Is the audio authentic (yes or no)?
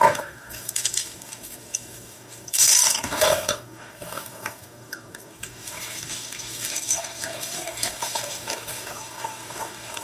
no